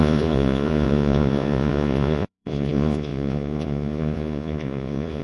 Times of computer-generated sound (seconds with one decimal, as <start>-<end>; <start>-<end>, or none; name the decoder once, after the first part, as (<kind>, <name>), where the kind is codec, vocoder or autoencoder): 0.0-5.2 (vocoder, Vocos)